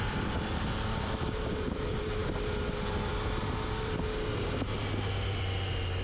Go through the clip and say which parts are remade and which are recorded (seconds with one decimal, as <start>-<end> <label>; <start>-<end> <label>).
0.0-6.0 recorded